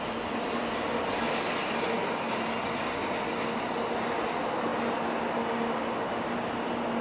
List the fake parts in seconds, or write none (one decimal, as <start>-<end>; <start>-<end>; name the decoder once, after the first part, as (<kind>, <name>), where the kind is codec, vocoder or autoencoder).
none